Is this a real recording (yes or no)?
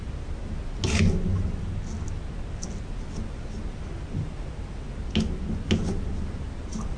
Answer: yes